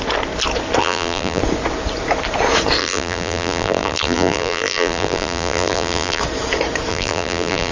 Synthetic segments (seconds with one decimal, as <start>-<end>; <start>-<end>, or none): 0.8-1.4; 2.8-6.2; 6.9-7.7